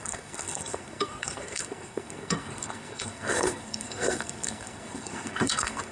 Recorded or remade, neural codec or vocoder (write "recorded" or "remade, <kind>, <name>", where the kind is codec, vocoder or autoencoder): remade, codec, SNAC